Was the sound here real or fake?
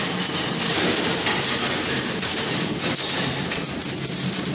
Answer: real